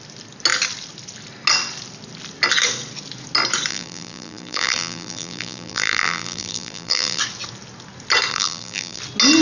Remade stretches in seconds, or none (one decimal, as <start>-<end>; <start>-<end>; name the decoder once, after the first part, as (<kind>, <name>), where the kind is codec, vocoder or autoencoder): 3.7-7.2 (vocoder, BigVGAN v2); 8.3-9.0

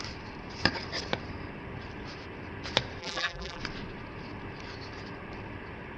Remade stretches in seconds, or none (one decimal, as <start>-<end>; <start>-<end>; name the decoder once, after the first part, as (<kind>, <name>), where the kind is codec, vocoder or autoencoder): 3.0-3.6 (vocoder, BigVGAN v2)